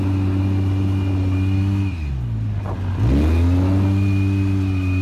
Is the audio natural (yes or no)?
yes